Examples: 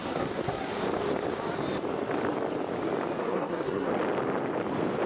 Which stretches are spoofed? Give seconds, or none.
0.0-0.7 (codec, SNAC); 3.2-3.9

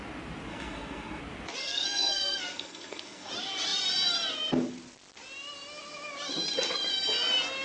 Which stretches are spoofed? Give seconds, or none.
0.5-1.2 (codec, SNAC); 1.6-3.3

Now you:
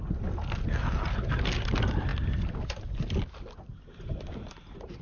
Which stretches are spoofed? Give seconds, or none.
none